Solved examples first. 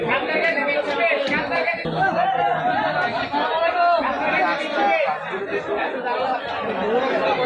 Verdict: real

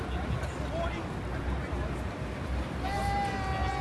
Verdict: real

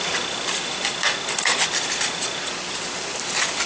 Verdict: real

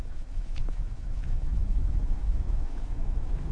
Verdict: fake